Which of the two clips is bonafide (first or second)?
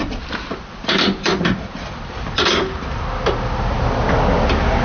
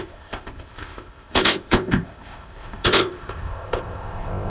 first